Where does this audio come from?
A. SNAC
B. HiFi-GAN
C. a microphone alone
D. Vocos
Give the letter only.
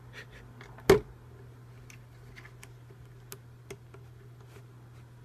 C